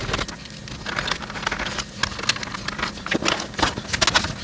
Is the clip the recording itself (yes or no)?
yes